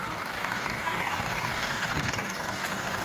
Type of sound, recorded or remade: remade